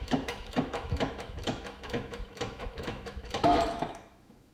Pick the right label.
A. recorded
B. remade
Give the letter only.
B